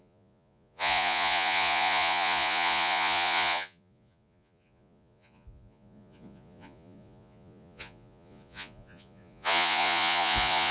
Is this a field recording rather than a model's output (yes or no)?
no